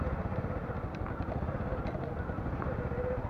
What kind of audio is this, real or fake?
real